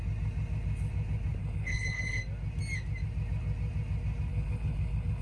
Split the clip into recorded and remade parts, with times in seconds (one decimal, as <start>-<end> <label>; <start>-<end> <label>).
0.0-1.4 recorded; 1.4-2.2 remade; 2.2-4.3 recorded; 4.3-5.2 remade